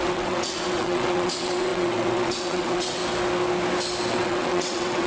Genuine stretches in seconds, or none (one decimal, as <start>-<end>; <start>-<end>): 3.0-4.1